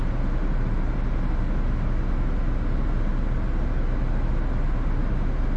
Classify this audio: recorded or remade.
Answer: recorded